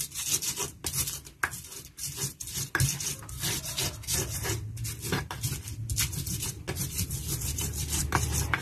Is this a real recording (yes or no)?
yes